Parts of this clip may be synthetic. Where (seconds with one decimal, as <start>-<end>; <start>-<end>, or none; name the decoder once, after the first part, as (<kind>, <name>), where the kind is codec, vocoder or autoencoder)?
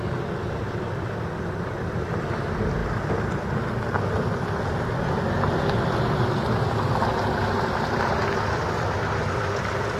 none